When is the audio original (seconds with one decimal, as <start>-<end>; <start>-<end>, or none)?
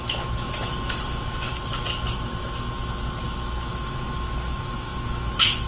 1.5-3.7